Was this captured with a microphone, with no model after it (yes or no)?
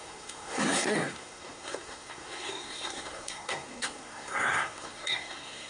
no